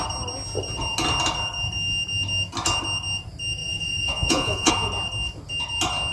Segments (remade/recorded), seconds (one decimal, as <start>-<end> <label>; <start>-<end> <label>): 0.0-3.6 recorded; 3.6-4.7 remade; 4.7-6.1 recorded